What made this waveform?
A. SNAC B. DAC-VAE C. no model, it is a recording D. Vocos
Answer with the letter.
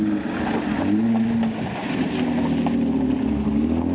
C